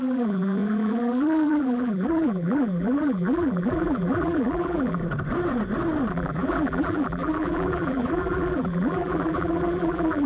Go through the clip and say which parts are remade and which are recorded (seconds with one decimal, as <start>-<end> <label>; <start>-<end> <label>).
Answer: 0.0-5.0 remade; 5.0-6.1 recorded; 6.1-10.3 remade

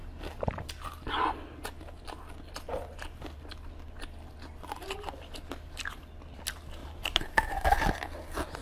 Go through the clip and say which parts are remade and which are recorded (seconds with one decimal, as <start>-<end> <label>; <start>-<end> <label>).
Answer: 0.0-0.7 remade; 0.7-2.7 recorded; 2.7-3.5 remade; 3.5-6.8 recorded; 6.8-7.7 remade; 7.7-8.6 recorded